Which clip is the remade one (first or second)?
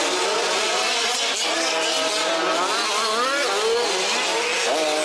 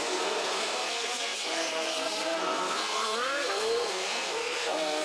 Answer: second